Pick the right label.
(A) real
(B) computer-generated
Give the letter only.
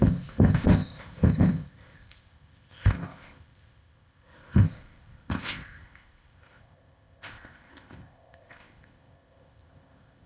B